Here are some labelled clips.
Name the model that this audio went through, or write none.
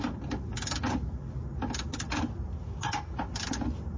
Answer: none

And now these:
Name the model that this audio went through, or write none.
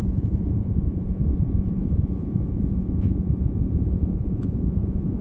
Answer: vocoder, Vocos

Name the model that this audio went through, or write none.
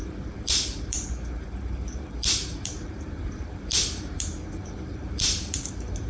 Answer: vocoder, BigVGAN v2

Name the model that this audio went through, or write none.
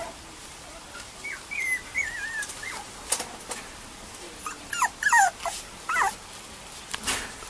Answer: none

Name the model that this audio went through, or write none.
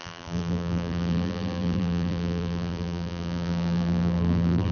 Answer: vocoder, BigVGAN v2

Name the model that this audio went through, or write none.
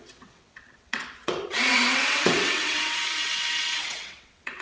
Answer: vocoder, WaveNeXt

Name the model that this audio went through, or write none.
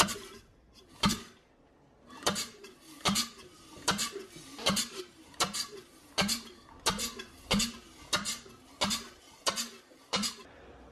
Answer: none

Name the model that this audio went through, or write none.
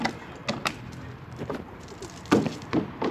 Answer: none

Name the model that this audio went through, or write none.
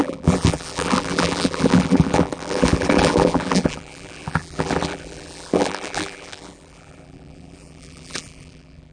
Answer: vocoder, BigVGAN v2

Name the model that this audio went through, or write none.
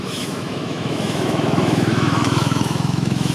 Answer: autoencoder, DAC-VAE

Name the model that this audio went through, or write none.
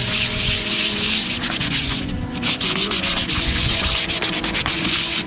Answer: vocoder, Vocos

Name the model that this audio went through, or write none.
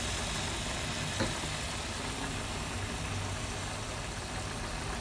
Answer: none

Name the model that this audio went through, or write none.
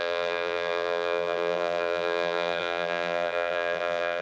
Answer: vocoder, BigVGAN v2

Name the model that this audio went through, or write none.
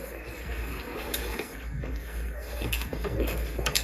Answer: codec, SNAC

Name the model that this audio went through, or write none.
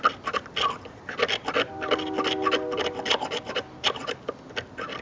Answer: none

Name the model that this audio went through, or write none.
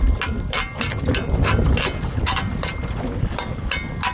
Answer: none